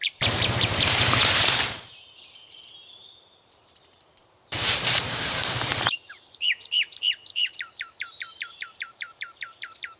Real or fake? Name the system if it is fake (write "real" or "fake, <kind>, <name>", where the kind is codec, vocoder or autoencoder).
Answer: fake, vocoder, BigVGAN v2